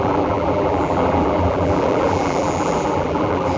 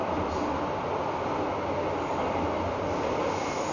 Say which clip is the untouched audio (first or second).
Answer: second